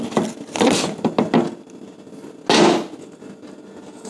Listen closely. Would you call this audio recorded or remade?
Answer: recorded